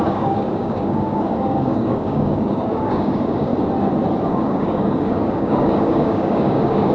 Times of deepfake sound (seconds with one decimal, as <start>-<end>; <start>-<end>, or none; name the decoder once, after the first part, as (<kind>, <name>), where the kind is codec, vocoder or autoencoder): 0.0-3.5 (codec, DAC); 4.2-6.9